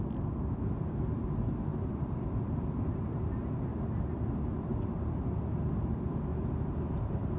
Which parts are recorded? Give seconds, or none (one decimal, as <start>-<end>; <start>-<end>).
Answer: 0.0-1.7; 2.3-3.7; 4.4-6.3